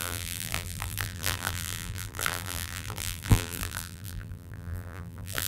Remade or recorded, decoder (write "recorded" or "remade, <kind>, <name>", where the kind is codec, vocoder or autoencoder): remade, vocoder, BigVGAN v2